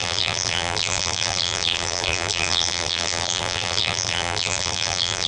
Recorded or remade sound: remade